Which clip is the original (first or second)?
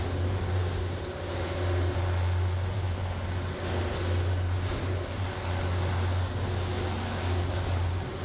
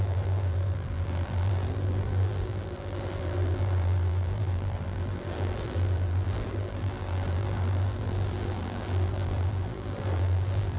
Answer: first